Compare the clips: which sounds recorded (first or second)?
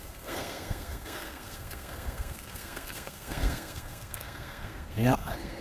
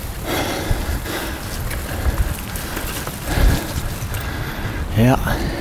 second